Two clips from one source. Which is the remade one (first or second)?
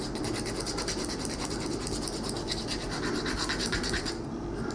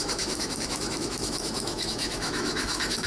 second